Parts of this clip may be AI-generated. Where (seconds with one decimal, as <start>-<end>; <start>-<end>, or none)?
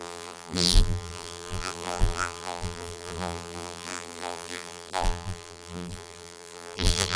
0.0-7.2